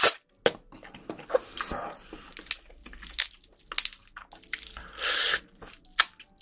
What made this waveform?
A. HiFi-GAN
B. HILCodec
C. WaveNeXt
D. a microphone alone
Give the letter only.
D